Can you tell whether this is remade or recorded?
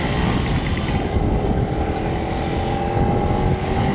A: recorded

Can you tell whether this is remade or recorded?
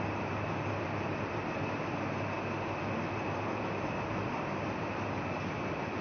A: recorded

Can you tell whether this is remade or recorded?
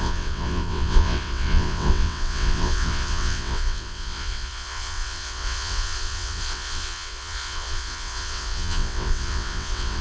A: remade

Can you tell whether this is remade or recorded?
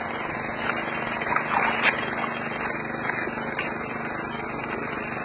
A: recorded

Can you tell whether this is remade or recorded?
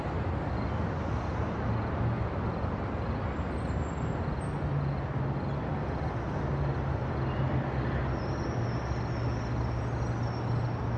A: recorded